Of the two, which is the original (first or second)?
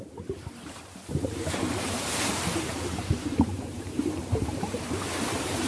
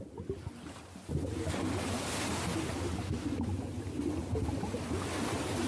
second